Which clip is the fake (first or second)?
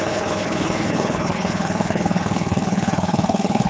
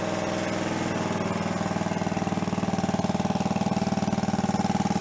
first